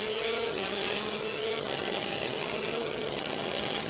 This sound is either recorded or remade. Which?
remade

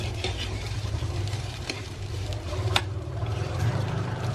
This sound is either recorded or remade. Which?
remade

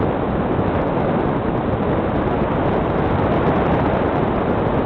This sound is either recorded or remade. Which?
recorded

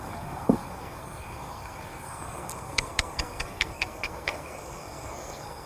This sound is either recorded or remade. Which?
remade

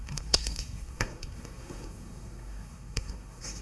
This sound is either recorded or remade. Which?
remade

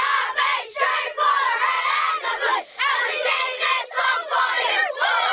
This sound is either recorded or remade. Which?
remade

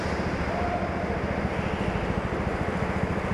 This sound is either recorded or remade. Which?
recorded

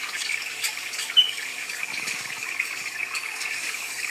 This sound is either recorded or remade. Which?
remade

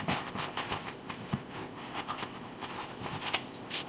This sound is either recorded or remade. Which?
remade